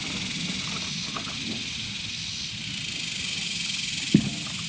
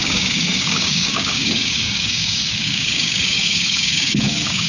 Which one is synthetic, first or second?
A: second